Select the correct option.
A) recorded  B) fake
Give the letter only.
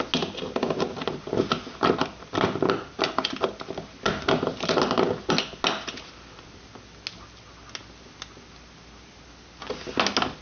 A